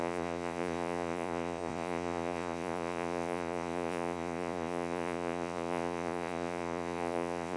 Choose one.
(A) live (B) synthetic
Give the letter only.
B